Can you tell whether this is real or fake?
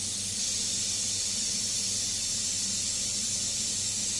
real